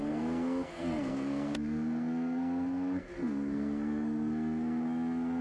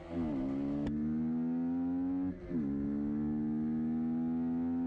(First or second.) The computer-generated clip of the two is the first